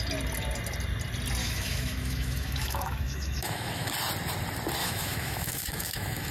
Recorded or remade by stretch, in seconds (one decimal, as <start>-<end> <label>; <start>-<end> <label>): 0.0-1.4 recorded; 1.4-3.9 remade; 3.9-4.8 recorded; 4.8-6.3 remade